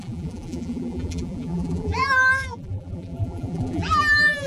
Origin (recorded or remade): remade